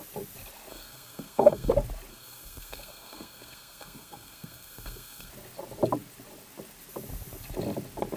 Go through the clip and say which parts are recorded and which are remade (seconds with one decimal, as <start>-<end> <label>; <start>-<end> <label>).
0.0-0.7 recorded; 0.7-1.7 remade; 1.7-2.1 recorded; 2.1-5.3 remade; 5.3-8.2 recorded